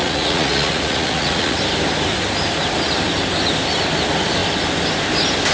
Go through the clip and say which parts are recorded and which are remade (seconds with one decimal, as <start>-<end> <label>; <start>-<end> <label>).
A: 0.0-1.6 remade; 1.6-5.5 recorded